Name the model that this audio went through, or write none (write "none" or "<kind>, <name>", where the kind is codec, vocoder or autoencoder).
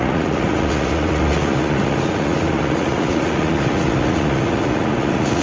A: vocoder, Vocos